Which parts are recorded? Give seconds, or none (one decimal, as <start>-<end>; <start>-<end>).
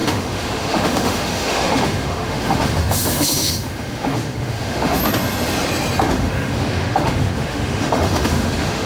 5.0-6.1